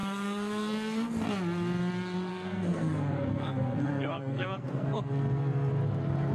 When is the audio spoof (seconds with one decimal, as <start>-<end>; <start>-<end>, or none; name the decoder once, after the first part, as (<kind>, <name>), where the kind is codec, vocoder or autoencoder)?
0.0-1.1 (codec, SNAC); 2.3-5.7